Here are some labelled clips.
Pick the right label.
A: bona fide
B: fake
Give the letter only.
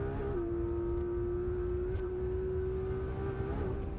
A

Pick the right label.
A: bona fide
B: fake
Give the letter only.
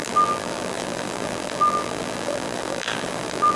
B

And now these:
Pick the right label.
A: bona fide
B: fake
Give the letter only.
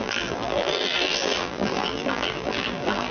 B